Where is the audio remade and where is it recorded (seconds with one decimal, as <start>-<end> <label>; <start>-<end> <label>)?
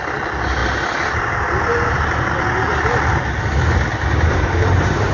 0.0-3.9 recorded; 3.9-5.1 remade